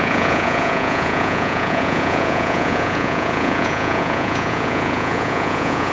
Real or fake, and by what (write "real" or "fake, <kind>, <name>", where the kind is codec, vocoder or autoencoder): fake, vocoder, Vocos